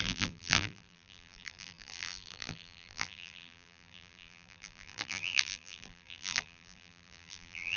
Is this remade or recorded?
remade